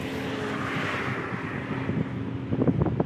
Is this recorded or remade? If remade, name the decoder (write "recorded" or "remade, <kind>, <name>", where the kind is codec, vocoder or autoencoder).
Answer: recorded